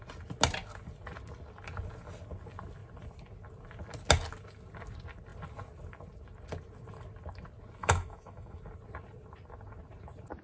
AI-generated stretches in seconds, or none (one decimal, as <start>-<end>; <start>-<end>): 7.8-8.6